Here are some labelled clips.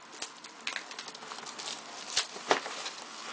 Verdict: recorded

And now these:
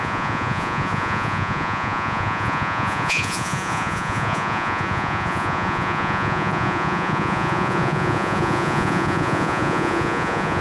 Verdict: remade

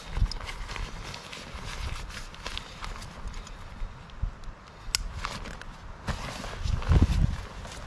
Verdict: recorded